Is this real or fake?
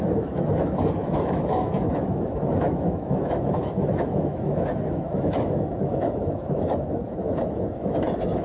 fake